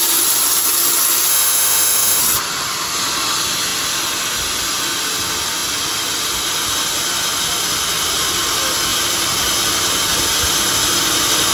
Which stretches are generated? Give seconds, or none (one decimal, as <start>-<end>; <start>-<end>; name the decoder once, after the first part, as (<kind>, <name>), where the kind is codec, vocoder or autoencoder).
1.3-2.2 (autoencoder, DAC-VAE)